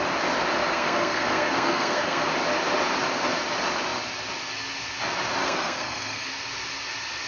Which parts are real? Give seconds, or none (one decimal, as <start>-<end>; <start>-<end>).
0.0-0.7; 2.3-5.4; 6.3-7.3